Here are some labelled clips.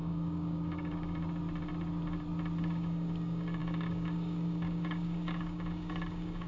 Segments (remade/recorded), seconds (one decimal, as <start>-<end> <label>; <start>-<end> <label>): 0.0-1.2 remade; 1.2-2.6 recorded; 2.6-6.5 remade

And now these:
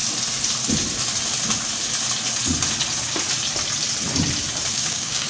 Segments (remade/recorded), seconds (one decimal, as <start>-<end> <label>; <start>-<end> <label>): 0.0-4.7 recorded; 4.7-5.3 remade

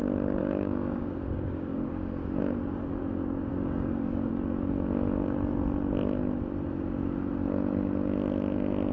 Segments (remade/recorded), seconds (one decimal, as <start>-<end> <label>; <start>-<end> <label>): 0.0-0.4 recorded; 0.4-2.4 remade; 2.4-3.5 recorded; 3.5-4.3 remade; 4.3-8.9 recorded

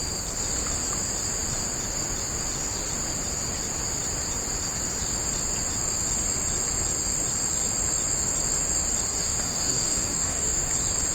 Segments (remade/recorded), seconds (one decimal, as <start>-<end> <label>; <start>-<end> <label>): 0.0-9.1 recorded; 9.1-10.7 remade; 10.7-11.1 recorded

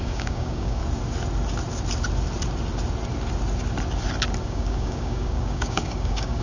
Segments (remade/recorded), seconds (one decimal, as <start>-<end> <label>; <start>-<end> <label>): 0.0-0.8 remade; 0.8-4.4 recorded; 4.4-6.4 remade

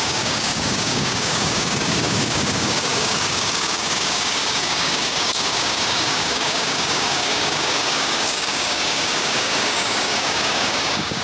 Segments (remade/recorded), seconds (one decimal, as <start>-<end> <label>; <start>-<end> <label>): 0.0-11.2 remade

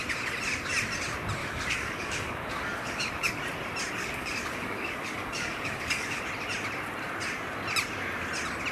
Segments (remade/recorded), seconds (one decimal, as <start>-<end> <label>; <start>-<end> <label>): 0.0-1.4 recorded; 1.4-3.4 remade; 3.4-4.0 recorded; 4.0-6.2 remade; 6.2-8.7 recorded

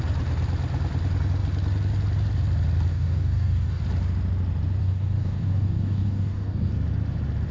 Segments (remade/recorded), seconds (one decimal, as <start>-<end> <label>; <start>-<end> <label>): 0.0-2.9 recorded; 2.9-3.8 remade; 3.8-4.8 recorded; 4.8-6.7 remade; 6.7-7.5 recorded